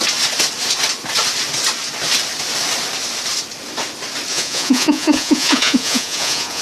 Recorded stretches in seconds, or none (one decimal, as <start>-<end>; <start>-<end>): 0.0-4.3